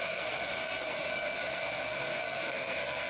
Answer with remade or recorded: remade